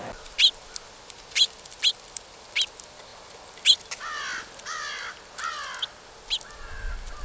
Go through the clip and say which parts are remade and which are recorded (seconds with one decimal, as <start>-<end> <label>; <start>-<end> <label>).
0.0-7.2 recorded